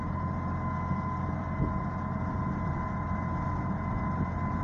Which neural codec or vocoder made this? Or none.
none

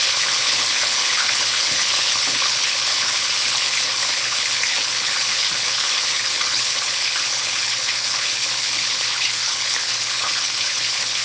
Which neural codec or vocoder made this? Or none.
codec, HILCodec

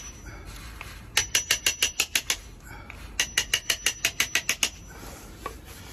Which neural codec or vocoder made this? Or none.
none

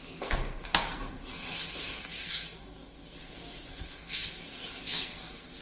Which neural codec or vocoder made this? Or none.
codec, SNAC